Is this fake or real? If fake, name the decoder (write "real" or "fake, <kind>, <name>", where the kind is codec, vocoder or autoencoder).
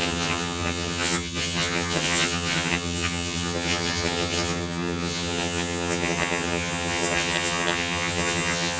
fake, vocoder, HiFi-GAN